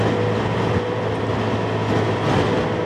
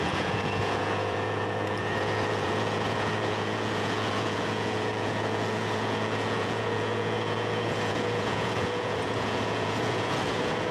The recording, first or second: first